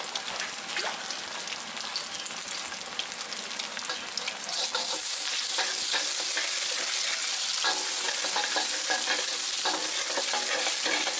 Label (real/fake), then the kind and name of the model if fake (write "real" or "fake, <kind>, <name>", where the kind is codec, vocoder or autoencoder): real